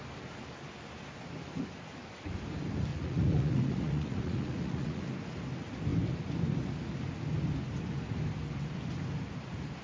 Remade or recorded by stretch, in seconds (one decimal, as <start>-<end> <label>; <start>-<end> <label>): 0.0-2.9 recorded; 2.9-5.1 remade; 5.1-9.8 recorded